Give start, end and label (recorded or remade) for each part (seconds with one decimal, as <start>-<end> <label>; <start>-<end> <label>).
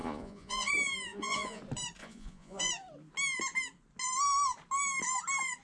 0.0-0.7 remade; 0.7-1.1 recorded; 1.1-1.6 remade; 1.6-2.0 recorded; 2.0-2.7 remade; 2.7-5.6 recorded